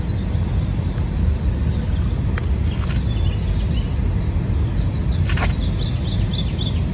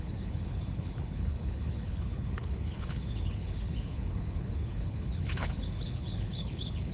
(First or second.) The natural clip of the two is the first